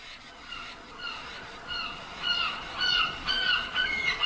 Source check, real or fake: fake